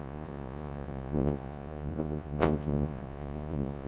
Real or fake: fake